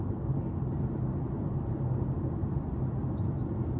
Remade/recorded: recorded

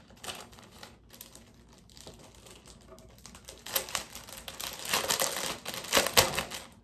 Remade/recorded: recorded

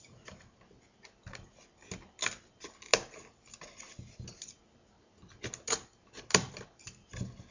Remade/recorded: recorded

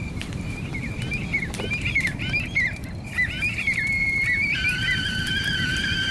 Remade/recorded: remade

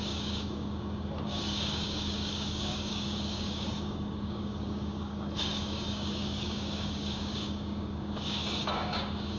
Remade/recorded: remade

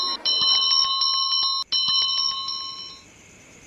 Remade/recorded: recorded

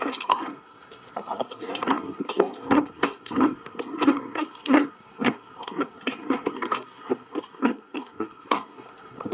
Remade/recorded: remade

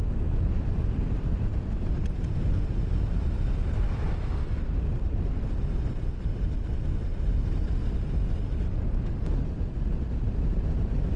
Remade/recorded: recorded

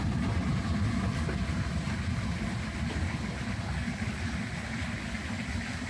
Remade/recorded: recorded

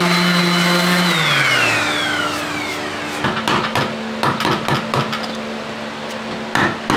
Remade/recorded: recorded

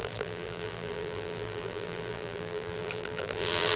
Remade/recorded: remade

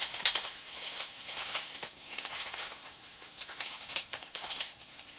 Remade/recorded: remade